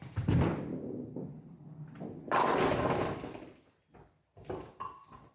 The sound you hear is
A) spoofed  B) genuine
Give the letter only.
B